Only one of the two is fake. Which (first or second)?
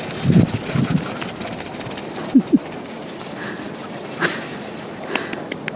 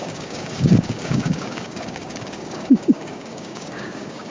second